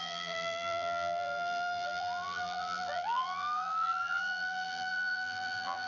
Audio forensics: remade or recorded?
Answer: remade